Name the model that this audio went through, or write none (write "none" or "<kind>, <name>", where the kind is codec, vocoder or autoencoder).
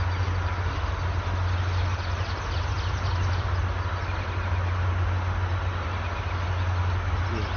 none